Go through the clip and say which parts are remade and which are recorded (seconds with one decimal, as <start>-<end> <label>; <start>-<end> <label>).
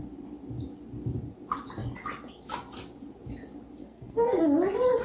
0.0-3.8 recorded; 3.8-4.4 remade; 4.4-5.0 recorded